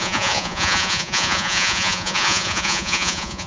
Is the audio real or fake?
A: fake